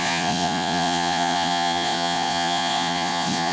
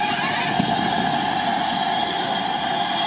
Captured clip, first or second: second